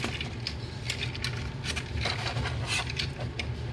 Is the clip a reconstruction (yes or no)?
no